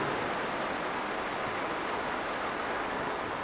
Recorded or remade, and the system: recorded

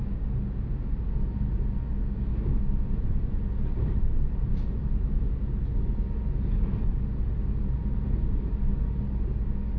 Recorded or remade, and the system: recorded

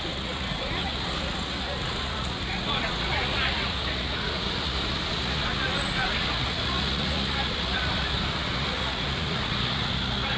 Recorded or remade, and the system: remade, vocoder, Vocos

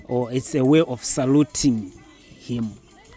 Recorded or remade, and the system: recorded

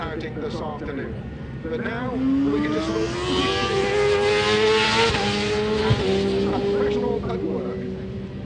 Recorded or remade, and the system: recorded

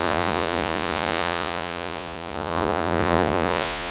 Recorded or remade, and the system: remade, vocoder, Vocos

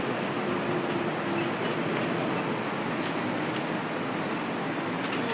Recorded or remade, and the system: recorded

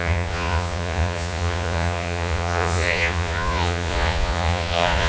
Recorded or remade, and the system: remade, vocoder, Vocos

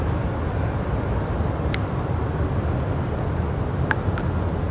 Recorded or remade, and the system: recorded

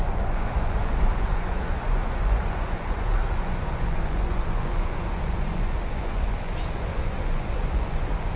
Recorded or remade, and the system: remade, vocoder, Vocos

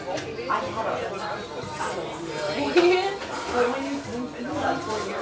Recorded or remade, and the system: recorded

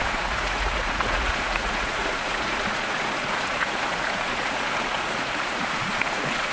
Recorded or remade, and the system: remade, vocoder, Vocos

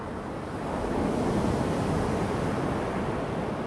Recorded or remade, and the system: recorded